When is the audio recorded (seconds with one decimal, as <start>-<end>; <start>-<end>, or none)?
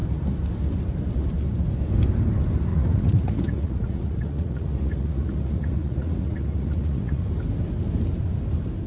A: 0.0-2.7; 7.2-8.9